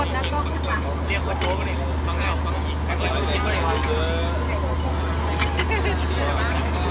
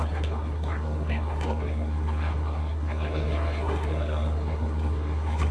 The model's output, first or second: second